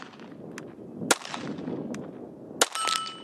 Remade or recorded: recorded